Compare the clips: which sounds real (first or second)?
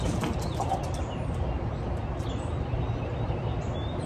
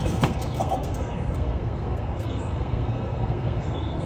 first